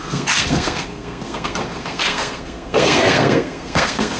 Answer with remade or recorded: remade